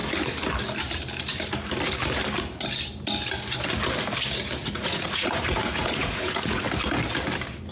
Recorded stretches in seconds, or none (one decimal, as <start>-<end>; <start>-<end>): 0.0-4.6; 6.6-7.7